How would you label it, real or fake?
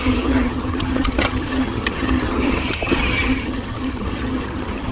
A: fake